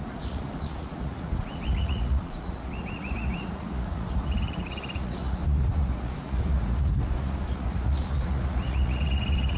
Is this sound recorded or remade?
remade